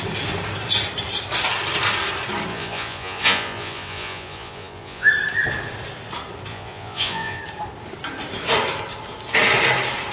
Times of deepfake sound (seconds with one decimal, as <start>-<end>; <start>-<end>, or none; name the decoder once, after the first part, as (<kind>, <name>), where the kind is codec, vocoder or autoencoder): 2.5-5.1 (vocoder, Vocos); 6.5-7.4